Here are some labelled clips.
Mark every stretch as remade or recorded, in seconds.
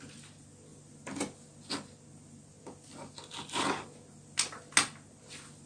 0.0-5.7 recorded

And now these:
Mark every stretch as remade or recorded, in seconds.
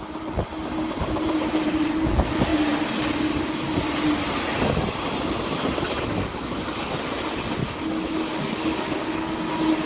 0.0-7.6 recorded; 7.6-9.3 remade; 9.3-9.9 recorded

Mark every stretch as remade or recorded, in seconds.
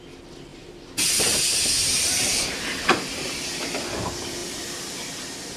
0.0-0.5 recorded; 0.5-3.9 remade; 3.9-5.6 recorded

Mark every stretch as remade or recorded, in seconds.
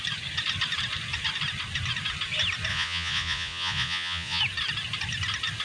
0.0-2.7 recorded; 2.7-4.4 remade; 4.4-5.6 recorded